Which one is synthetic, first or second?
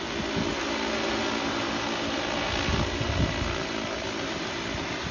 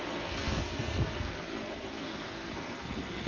second